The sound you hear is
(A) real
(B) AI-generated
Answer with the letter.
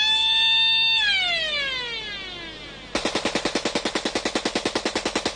A